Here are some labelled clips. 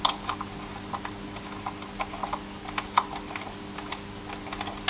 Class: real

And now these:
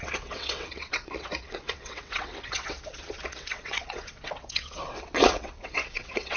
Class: fake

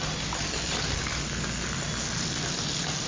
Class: real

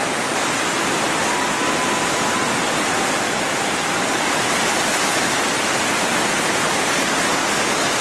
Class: real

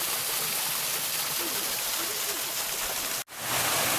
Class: real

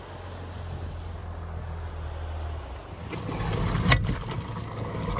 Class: real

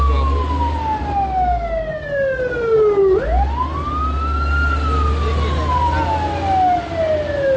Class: real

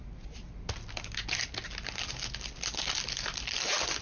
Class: real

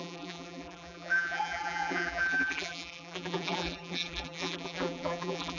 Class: fake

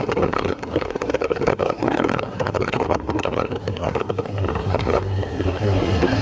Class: fake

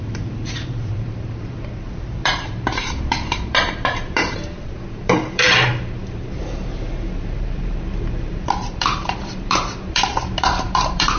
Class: fake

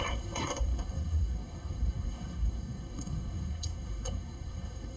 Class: fake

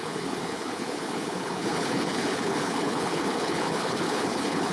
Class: fake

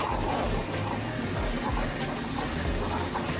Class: real